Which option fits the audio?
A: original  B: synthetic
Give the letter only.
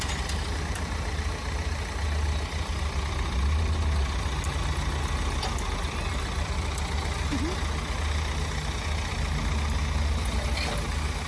A